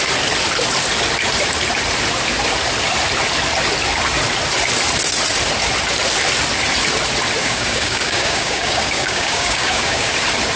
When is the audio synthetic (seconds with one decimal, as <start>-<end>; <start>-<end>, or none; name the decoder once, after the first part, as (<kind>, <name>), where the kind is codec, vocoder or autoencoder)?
7.4-10.1 (codec, DAC)